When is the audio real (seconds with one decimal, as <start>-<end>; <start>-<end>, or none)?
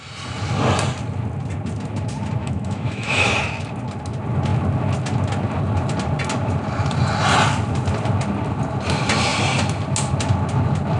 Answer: 0.0-2.4; 3.3-11.0